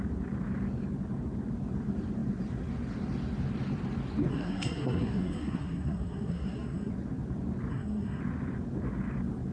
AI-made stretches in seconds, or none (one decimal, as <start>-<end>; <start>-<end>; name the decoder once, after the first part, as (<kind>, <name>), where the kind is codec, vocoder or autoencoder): 4.3-6.9 (codec, SNAC); 7.7-8.2